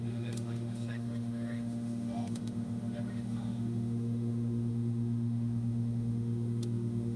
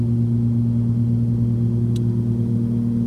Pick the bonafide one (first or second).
second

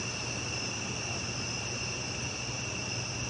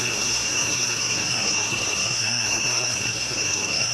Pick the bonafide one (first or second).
first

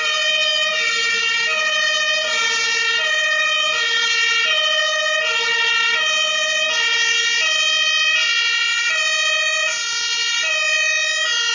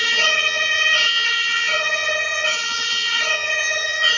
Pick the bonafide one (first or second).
first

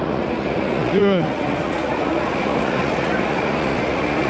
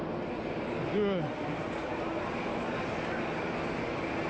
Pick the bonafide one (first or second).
second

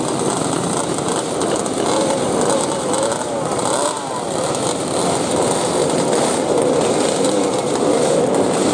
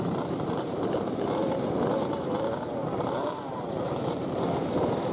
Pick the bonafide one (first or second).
first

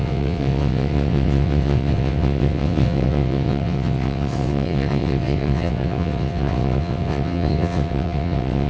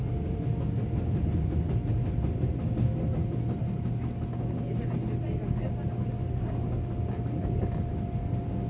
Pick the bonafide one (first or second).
second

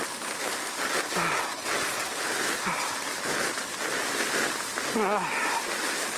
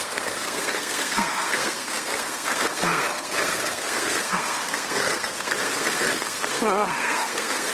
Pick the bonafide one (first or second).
first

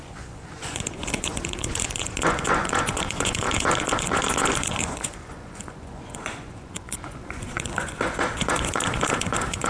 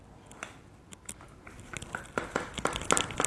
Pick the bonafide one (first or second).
second